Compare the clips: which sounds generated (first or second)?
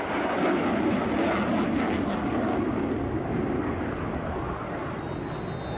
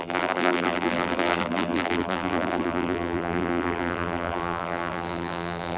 second